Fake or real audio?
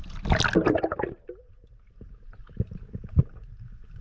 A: real